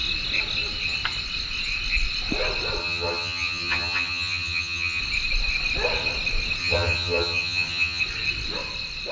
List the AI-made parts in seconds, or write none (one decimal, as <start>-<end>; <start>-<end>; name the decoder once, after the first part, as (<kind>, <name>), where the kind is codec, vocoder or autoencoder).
2.8-5.0 (vocoder, HiFi-GAN); 6.6-8.0